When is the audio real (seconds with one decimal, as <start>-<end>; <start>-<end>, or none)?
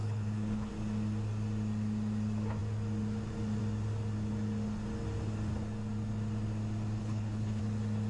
0.7-7.0; 7.6-8.1